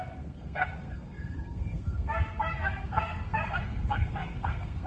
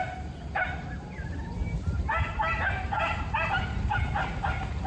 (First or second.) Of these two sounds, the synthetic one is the first